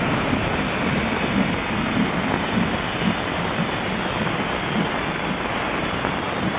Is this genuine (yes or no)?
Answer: yes